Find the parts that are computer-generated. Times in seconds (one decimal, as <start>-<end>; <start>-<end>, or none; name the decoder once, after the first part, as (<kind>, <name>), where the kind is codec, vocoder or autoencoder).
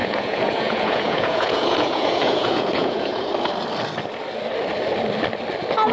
0.0-3.3 (vocoder, Vocos)